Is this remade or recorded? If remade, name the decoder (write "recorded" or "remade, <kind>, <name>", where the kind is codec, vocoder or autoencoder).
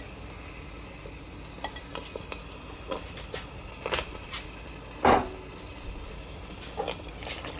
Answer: recorded